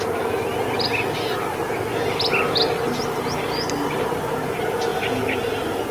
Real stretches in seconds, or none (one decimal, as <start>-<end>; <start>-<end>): 0.0-5.9